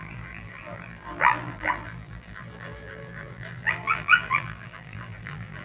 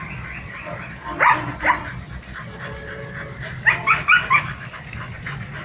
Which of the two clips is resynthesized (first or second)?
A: first